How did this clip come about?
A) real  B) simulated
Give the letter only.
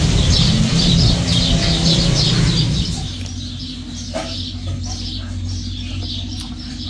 A